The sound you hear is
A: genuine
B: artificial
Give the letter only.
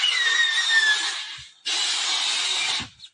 A